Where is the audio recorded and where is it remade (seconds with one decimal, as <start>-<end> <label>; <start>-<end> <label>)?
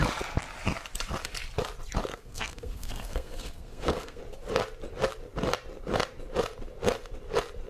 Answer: 0.0-2.1 recorded; 2.1-4.2 remade; 4.2-7.7 recorded